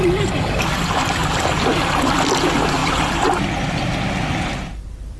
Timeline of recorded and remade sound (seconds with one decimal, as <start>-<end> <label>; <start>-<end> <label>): 0.0-1.2 recorded; 1.2-2.2 remade; 2.2-2.8 recorded; 2.8-3.4 remade; 3.4-5.2 recorded